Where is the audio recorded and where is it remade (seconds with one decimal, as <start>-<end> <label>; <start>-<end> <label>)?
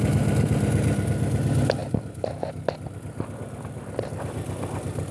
0.0-5.1 recorded